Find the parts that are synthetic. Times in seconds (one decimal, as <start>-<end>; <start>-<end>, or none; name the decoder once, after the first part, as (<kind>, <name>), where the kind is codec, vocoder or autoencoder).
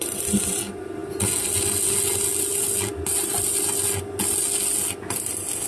none